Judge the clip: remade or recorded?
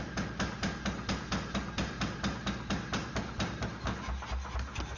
recorded